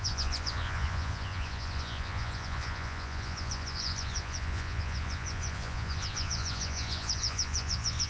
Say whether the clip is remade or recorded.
remade